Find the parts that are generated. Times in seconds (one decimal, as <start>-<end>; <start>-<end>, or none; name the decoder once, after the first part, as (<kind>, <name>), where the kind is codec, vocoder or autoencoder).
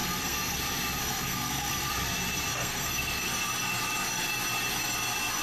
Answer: 0.0-0.6 (codec, SNAC); 1.0-1.9; 2.5-3.3